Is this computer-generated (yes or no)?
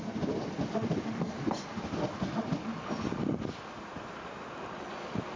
no